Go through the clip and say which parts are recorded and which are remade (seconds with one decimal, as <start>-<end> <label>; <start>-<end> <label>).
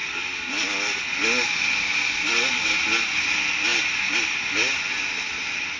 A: 0.0-5.8 recorded